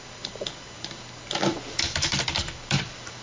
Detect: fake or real fake